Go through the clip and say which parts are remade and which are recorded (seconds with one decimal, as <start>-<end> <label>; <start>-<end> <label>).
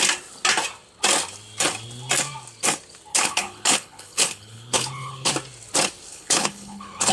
0.0-3.1 recorded; 3.1-5.3 remade; 5.3-6.1 recorded; 6.1-7.1 remade